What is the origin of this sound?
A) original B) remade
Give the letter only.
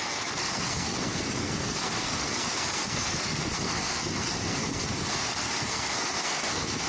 B